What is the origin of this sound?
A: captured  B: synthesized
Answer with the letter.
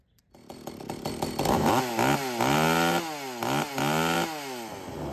A